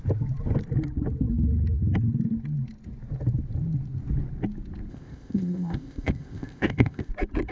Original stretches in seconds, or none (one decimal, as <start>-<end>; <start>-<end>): 0.0-4.9; 7.1-7.5